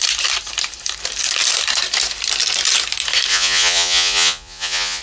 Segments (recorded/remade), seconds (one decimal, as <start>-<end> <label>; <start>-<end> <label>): 0.0-3.3 recorded; 3.3-5.0 remade